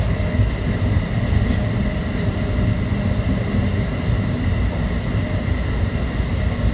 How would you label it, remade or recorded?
recorded